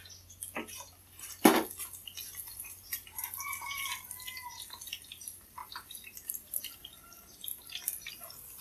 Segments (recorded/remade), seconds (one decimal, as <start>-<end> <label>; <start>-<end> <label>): 0.0-2.5 recorded; 2.5-3.8 remade; 3.8-5.6 recorded; 5.6-6.6 remade; 6.6-8.6 recorded